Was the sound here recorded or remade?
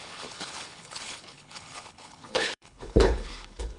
remade